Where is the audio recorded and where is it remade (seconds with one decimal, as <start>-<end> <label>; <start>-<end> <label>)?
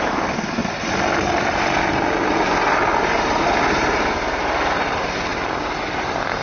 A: 0.0-0.6 recorded; 0.6-1.3 remade; 1.3-5.3 recorded; 5.3-6.0 remade; 6.0-6.4 recorded